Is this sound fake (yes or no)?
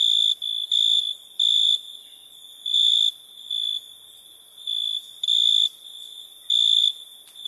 no